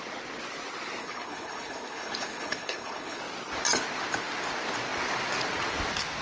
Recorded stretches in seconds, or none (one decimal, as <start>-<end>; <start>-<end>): 0.0-1.0; 3.2-6.2